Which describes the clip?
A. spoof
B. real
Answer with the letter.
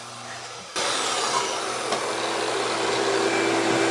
B